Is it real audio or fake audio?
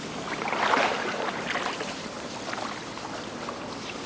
real